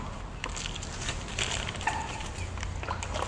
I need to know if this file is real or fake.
real